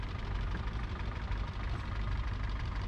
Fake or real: fake